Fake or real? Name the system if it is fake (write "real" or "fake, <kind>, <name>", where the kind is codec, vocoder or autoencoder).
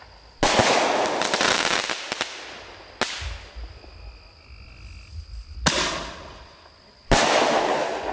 real